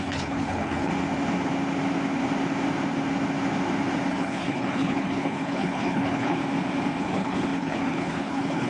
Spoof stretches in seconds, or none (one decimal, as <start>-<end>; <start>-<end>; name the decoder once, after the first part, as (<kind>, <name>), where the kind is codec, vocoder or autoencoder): 0.0-0.9 (codec, HILCodec); 4.1-6.4; 7.0-8.7